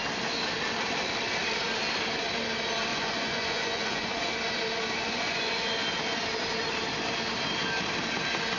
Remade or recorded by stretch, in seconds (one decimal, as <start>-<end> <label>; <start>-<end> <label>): 0.0-2.9 recorded; 2.9-4.3 remade; 4.3-5.0 recorded; 5.0-5.7 remade; 5.7-8.6 recorded